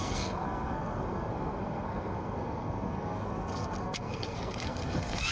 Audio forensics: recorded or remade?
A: remade